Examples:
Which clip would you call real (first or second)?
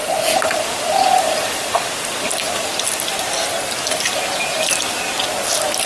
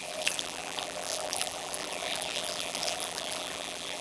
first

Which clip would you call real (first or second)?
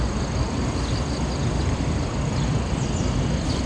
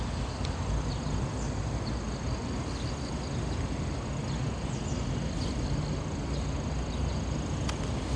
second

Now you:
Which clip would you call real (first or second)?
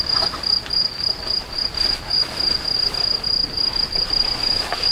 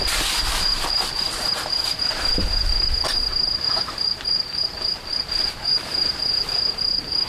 first